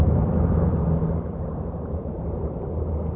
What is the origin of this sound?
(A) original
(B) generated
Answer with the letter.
B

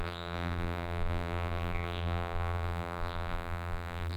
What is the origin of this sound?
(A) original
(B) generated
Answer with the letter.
B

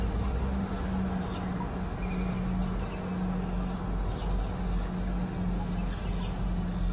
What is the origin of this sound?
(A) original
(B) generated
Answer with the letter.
A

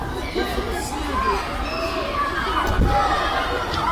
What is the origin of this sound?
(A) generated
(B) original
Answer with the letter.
B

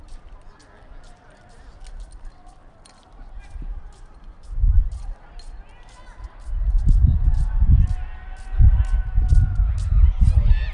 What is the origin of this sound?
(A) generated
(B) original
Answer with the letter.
B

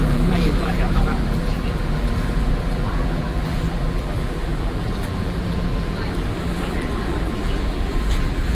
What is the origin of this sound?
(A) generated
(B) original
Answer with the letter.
A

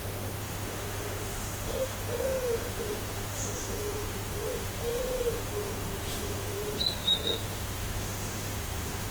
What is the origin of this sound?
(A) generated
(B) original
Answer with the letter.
A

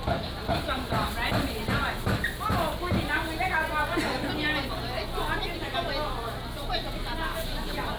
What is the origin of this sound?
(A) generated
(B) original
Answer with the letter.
B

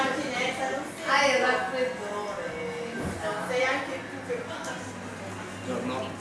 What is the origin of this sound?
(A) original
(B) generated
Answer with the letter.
A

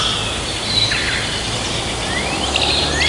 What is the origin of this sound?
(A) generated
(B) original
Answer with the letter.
B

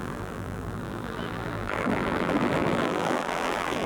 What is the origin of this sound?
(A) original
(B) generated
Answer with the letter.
B